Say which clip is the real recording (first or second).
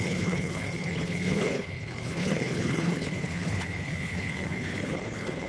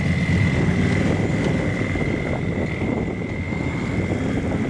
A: second